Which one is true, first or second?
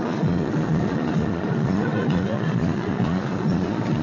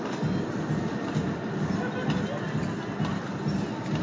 second